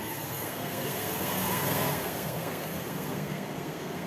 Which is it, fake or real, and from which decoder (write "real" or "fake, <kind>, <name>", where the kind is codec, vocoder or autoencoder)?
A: fake, codec, SNAC